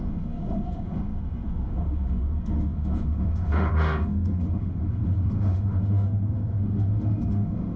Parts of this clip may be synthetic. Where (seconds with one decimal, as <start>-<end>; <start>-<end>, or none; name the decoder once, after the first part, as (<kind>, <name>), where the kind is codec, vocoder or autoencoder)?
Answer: 0.0-7.8 (autoencoder, DAC-VAE)